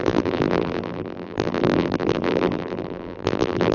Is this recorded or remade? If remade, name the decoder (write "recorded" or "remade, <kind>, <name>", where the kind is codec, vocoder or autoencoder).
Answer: remade, vocoder, BigVGAN v2